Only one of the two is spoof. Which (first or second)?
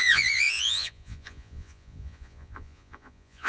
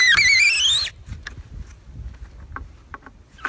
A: first